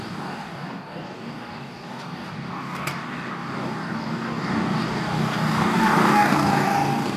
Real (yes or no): no